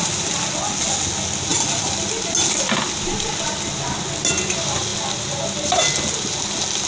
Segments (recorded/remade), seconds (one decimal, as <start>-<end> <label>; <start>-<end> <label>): 0.0-6.9 recorded